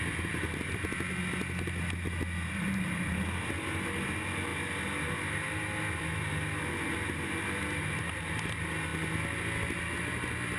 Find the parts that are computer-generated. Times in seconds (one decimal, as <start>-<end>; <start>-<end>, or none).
none